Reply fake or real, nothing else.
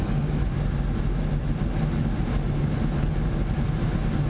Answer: real